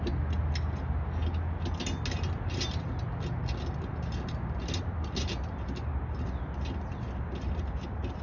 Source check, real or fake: real